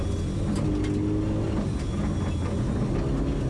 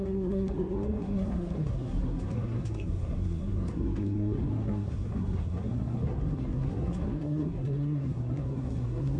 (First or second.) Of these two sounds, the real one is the first